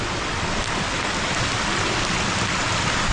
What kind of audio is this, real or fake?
real